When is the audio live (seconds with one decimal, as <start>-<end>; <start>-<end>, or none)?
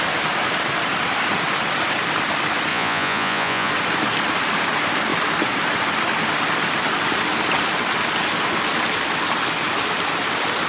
0.0-2.7; 3.7-10.7